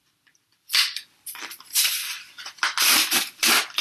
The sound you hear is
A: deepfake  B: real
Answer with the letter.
A